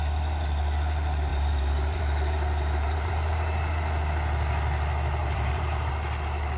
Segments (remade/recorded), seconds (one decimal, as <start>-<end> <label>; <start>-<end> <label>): 0.0-1.3 recorded; 1.3-3.1 remade; 3.1-5.2 recorded; 5.2-5.9 remade; 5.9-6.6 recorded